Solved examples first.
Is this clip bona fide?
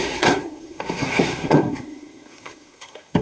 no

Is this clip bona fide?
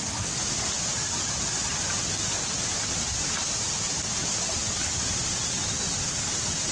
no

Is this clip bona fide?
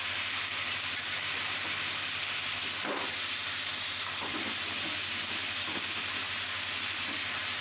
yes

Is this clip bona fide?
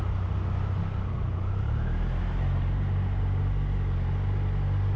yes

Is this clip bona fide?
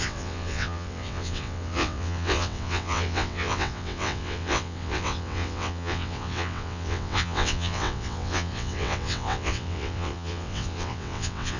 no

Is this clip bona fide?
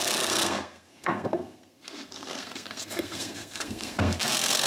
no